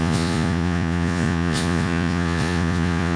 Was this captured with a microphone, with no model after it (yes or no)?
no